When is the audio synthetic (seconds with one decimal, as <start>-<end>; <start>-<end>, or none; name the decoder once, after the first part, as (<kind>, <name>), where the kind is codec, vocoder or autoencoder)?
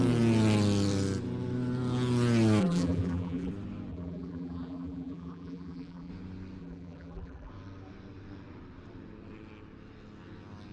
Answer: 2.6-3.5 (vocoder, BigVGAN v2); 3.9-6.1; 6.6-7.5